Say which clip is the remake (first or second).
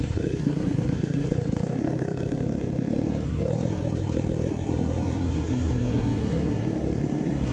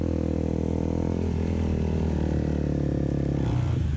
first